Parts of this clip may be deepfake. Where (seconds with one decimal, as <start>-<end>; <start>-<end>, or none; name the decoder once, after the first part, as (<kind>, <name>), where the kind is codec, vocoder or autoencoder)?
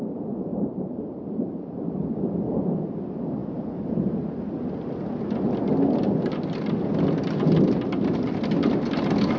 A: 0.5-1.9 (vocoder, BigVGAN v2)